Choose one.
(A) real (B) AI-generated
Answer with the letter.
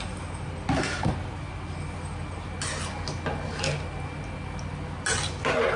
A